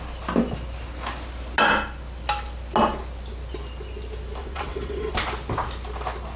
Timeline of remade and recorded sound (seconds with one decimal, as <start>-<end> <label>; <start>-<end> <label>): 0.0-4.4 recorded; 4.4-5.1 remade; 5.1-6.4 recorded